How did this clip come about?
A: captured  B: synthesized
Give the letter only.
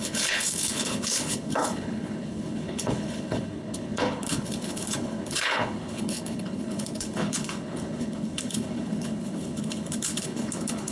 B